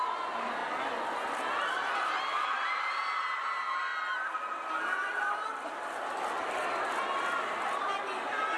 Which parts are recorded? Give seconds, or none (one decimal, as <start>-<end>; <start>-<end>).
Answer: 0.0-8.6